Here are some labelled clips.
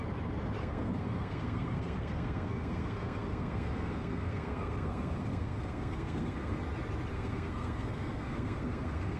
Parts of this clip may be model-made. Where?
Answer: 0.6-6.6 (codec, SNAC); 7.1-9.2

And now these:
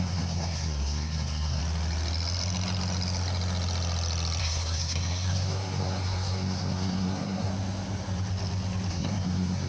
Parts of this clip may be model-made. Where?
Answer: 0.0-1.6 (codec, SNAC); 4.4-7.5; 8.9-9.7